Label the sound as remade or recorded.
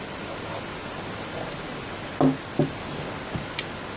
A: recorded